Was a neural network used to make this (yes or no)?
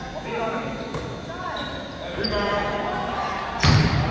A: no